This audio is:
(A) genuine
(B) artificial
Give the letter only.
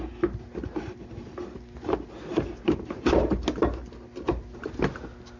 A